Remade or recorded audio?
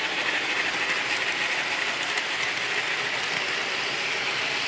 recorded